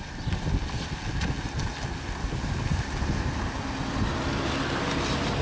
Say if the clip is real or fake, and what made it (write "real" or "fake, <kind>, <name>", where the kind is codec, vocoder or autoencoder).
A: real